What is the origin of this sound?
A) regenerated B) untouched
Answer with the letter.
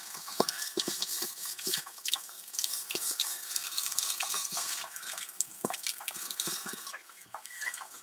A